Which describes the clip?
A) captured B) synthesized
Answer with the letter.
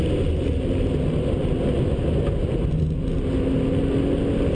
A